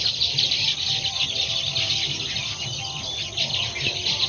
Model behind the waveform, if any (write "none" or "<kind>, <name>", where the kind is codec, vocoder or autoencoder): none